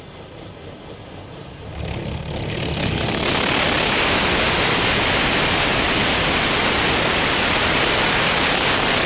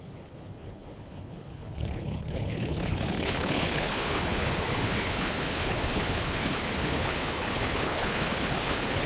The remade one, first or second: second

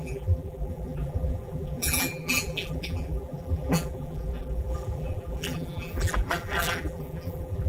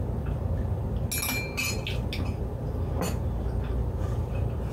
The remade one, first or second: first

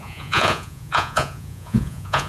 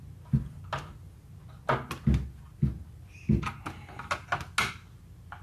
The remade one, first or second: first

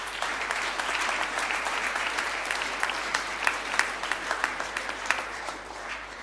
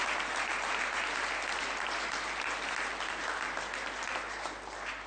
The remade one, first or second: first